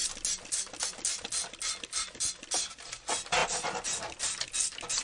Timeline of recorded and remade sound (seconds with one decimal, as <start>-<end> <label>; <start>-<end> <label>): 0.0-5.0 recorded